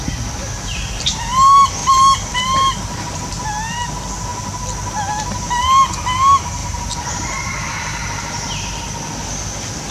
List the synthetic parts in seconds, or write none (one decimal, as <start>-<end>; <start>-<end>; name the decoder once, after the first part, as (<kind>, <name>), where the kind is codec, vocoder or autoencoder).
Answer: 1.8-2.4 (vocoder, BigVGAN v2); 6.6-8.9